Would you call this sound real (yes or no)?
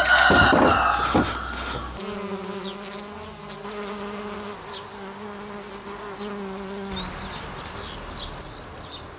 yes